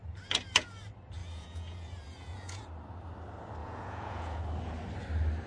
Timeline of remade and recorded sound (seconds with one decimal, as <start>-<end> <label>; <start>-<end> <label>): 0.0-1.2 recorded; 1.2-2.6 remade; 2.6-3.6 recorded; 3.6-4.4 remade; 4.4-5.5 recorded